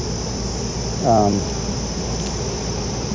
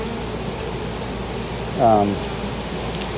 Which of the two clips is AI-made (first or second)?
first